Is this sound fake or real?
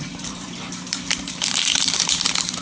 fake